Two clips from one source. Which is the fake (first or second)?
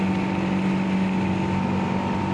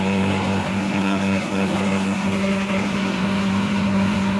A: second